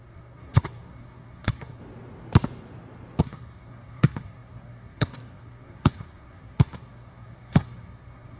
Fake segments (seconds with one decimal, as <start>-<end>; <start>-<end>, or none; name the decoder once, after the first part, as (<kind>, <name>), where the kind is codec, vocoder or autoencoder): 0.0-1.8 (codec, SNAC); 3.2-8.4